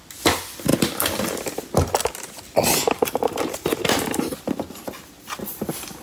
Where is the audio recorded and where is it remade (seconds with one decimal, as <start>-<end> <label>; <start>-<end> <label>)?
0.0-6.0 recorded